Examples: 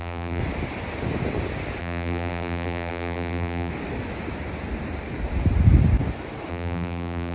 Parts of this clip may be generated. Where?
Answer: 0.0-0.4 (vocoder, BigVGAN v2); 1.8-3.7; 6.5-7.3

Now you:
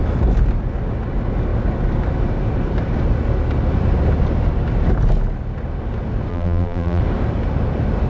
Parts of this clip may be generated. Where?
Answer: 6.3-7.0 (vocoder, BigVGAN v2)